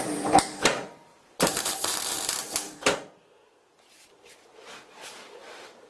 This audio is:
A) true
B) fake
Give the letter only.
B